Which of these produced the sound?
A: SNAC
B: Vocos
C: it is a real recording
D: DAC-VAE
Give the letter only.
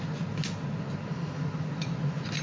C